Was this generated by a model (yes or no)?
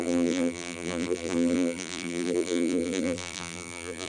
yes